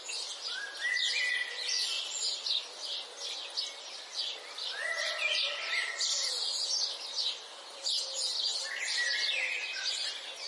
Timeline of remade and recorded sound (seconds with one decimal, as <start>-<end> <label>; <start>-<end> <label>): 0.0-4.3 recorded; 4.3-6.3 remade; 6.3-10.5 recorded